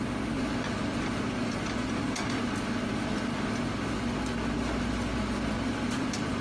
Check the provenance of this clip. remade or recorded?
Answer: recorded